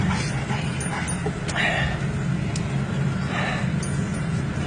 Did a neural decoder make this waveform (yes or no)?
no